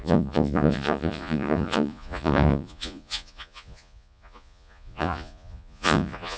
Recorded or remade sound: remade